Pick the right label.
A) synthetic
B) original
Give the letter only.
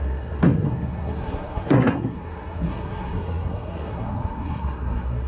A